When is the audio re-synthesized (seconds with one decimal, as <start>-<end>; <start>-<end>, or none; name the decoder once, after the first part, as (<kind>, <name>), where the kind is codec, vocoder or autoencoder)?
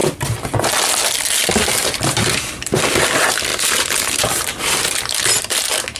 3.5-4.5 (vocoder, BigVGAN v2)